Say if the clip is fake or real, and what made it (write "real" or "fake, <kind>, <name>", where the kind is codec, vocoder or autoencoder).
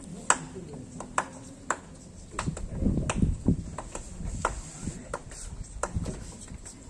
real